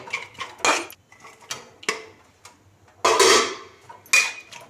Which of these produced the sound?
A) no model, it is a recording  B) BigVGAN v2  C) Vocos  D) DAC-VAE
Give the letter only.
A